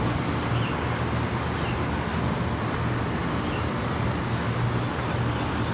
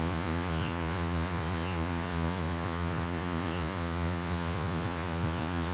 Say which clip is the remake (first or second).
second